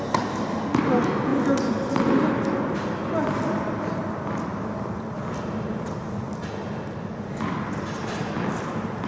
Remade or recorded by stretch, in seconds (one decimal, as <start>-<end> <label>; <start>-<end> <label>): 0.0-9.1 recorded